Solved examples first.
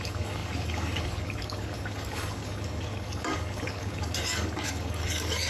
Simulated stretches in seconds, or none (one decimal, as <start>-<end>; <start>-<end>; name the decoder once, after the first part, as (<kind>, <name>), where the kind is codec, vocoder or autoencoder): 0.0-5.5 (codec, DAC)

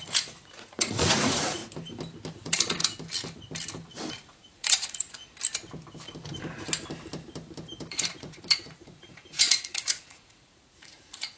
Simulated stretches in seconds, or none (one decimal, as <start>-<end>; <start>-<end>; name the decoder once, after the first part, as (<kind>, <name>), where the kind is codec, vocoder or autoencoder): 0.0-1.6 (vocoder, Vocos); 2.3-2.8; 4.1-5.2; 7.9-11.4

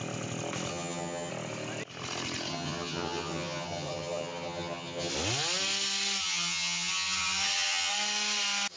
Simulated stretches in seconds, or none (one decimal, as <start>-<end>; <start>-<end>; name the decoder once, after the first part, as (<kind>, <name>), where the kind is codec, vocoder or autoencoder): 0.7-1.3 (vocoder, HiFi-GAN); 2.5-5.1; 6.2-7.9

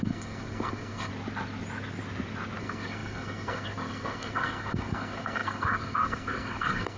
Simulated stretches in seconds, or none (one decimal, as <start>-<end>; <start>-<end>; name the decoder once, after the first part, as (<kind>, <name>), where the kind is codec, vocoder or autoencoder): 0.0-1.1 (codec, SNAC); 2.6-7.0